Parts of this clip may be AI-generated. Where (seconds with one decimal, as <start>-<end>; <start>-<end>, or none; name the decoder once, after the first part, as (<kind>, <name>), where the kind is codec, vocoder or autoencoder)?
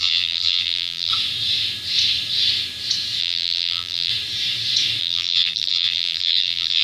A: 0.0-1.1 (vocoder, BigVGAN v2); 3.2-4.1; 5.0-6.8